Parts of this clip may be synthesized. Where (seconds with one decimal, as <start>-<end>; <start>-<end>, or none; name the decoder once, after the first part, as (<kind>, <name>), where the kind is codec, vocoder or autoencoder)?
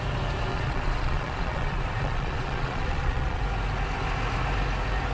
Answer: 0.5-3.4 (vocoder, Vocos)